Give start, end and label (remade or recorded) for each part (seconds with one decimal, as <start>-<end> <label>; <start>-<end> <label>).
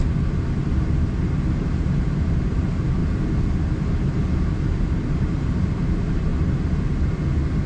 0.0-1.6 recorded; 1.6-3.0 remade; 3.0-5.1 recorded; 5.1-6.3 remade; 6.3-7.7 recorded